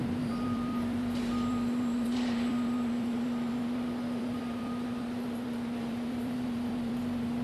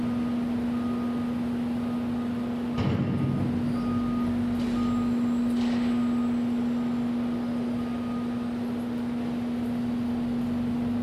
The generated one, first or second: first